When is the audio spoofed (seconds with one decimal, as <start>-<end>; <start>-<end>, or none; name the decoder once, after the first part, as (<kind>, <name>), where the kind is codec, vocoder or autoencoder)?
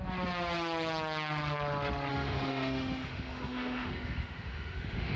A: 2.1-5.2 (autoencoder, DAC-VAE)